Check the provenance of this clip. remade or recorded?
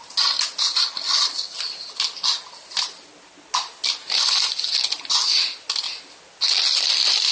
recorded